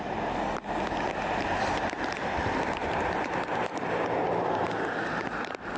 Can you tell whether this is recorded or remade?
recorded